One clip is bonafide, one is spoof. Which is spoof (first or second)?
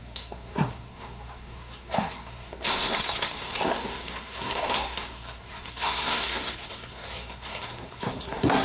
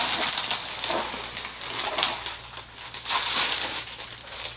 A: first